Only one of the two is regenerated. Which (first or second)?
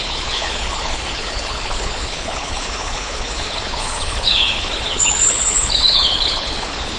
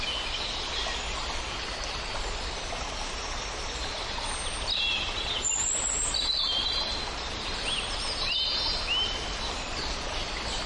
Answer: first